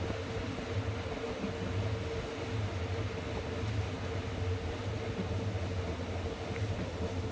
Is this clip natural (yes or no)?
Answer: yes